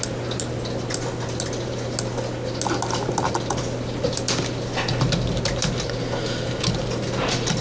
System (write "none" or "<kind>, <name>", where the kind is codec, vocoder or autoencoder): none